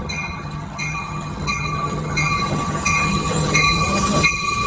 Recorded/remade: remade